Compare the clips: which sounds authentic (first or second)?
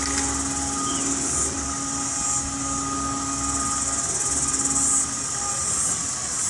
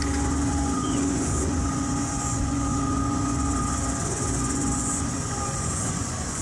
first